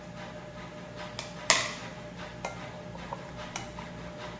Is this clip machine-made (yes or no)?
no